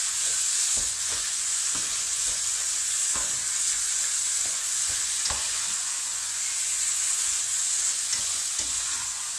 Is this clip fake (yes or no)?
yes